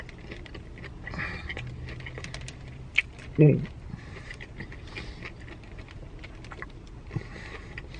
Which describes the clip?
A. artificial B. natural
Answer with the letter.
B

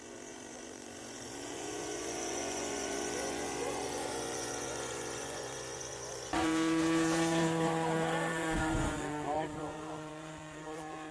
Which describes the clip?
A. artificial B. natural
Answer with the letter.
A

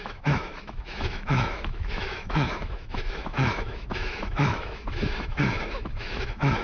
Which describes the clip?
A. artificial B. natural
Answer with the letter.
A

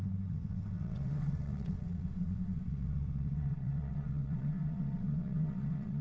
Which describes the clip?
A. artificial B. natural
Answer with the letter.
A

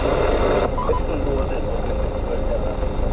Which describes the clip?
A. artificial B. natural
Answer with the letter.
B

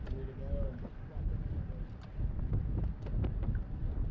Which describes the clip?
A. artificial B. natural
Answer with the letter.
B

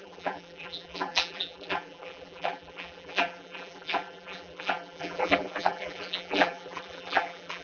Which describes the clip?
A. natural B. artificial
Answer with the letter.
B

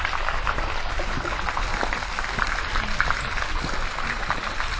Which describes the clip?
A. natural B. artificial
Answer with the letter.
A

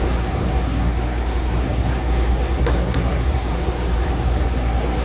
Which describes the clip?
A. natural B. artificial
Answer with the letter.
B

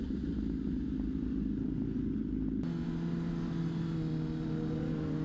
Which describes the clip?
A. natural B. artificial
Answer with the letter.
A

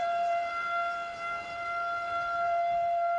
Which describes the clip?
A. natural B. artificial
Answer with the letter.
B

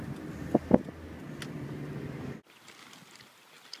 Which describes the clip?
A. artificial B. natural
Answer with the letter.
B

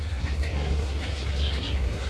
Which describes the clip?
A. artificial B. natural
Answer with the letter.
A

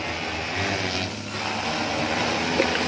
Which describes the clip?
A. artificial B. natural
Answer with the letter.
B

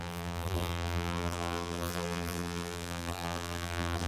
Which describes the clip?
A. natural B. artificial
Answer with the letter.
B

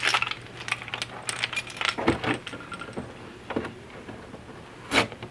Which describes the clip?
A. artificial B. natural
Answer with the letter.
B